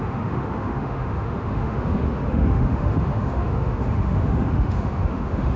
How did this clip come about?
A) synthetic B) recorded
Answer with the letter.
A